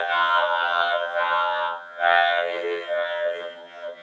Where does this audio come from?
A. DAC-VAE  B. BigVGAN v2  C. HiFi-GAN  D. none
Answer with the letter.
C